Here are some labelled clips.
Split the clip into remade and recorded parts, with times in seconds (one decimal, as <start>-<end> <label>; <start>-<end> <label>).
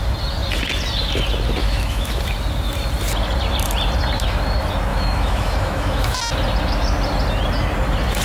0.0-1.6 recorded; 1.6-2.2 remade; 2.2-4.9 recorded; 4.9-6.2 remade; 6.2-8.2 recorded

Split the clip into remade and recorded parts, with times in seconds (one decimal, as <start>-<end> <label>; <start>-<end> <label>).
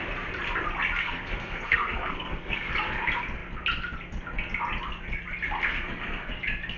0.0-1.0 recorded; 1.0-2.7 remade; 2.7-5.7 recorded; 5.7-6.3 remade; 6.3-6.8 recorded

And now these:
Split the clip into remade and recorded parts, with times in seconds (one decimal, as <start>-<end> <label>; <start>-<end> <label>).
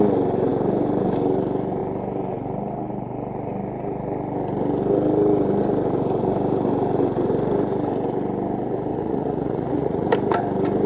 0.0-8.9 recorded; 8.9-10.1 remade; 10.1-10.9 recorded